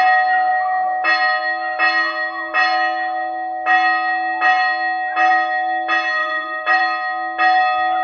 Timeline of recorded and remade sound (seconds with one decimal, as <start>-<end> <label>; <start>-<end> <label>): 0.0-6.2 recorded; 6.2-6.8 remade; 6.8-8.0 recorded